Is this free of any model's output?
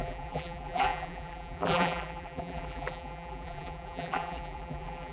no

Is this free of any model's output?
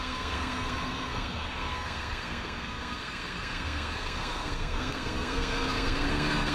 no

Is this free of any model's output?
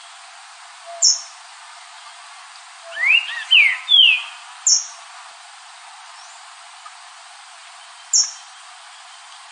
yes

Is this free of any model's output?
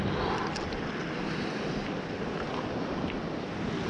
yes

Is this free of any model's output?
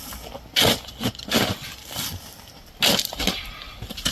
yes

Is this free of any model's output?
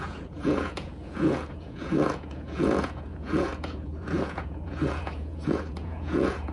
no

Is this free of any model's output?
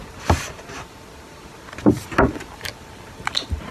yes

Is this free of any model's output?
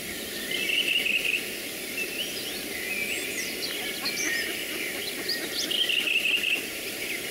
yes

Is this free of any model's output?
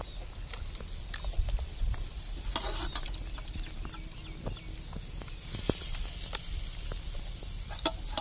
yes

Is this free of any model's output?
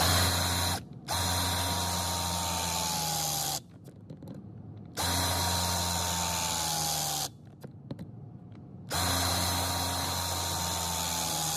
yes